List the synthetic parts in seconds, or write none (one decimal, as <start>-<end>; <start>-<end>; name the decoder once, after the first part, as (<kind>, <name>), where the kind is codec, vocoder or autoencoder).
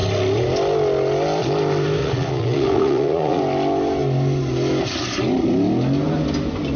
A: 2.0-3.4 (vocoder, Vocos)